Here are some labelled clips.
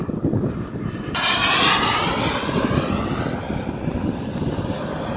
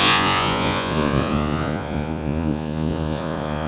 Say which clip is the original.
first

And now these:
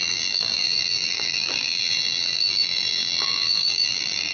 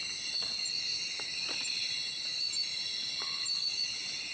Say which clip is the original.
second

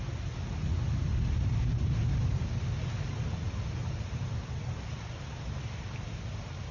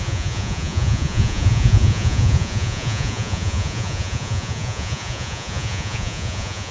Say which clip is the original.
first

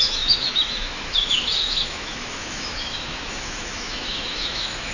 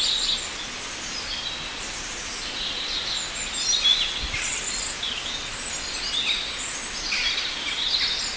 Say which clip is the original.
second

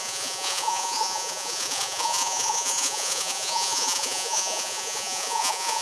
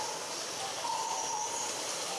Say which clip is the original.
second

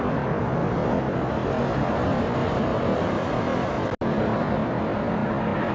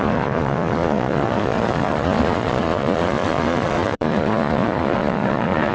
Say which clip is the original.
first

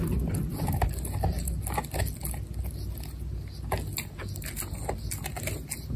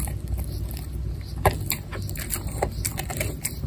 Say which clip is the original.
first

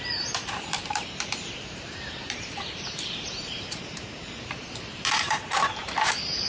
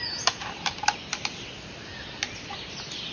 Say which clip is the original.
second